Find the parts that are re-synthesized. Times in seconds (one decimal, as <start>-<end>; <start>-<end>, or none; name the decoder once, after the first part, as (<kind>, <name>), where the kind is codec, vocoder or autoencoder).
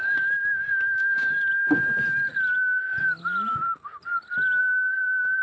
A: 0.0-1.5 (codec, DAC); 4.6-5.4